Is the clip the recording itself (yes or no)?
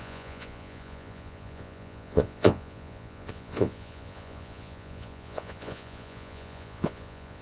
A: no